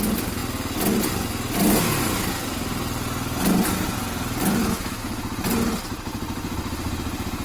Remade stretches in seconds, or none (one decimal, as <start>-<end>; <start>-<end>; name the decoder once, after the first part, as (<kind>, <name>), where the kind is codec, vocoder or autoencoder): 4.6-5.2 (autoencoder, DAC-VAE)